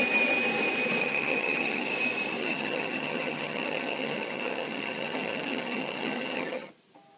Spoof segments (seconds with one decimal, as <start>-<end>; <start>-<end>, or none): 1.0-1.9; 2.4-6.7